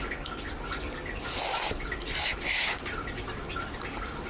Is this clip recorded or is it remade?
recorded